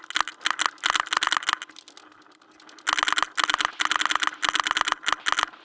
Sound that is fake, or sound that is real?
real